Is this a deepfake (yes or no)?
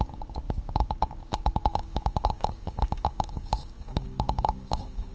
yes